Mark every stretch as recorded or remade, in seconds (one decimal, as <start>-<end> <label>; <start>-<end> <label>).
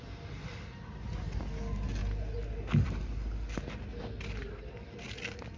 0.0-5.6 recorded